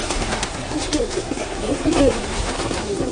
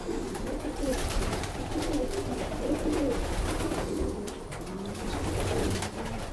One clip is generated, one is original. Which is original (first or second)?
second